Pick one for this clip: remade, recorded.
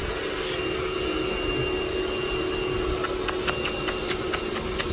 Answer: recorded